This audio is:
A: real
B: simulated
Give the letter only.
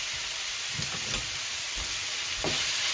A